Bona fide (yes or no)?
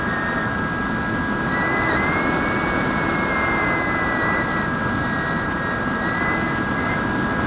yes